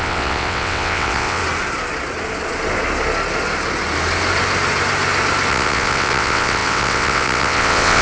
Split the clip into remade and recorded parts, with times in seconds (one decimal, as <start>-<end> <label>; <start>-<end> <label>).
0.0-1.4 remade; 1.4-5.5 recorded; 5.5-8.0 remade